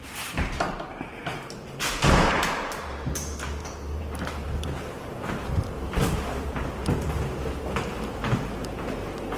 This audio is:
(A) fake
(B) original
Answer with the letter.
A